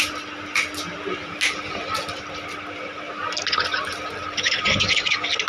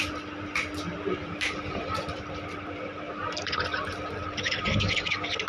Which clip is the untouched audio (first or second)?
first